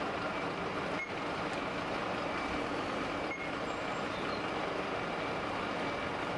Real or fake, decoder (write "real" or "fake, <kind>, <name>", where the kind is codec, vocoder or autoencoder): real